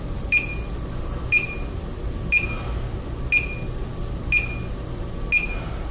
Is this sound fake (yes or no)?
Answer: no